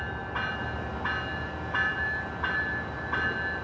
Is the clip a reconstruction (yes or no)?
no